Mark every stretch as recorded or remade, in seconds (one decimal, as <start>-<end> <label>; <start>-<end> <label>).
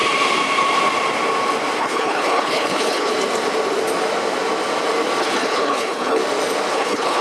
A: 0.0-1.8 recorded; 1.8-3.1 remade; 3.1-5.2 recorded; 5.2-6.2 remade; 6.2-6.7 recorded; 6.7-7.2 remade